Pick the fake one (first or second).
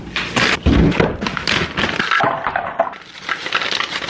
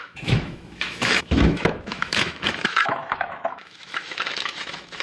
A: second